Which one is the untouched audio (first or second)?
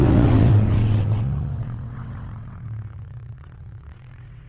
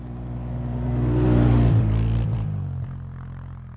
second